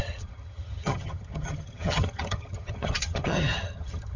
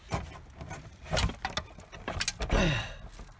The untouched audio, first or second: second